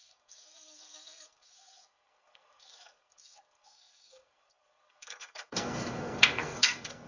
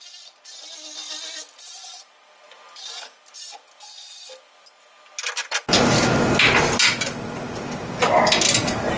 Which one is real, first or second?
second